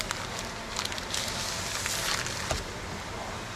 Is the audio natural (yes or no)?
yes